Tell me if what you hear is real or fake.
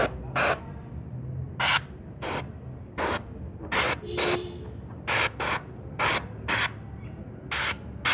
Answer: real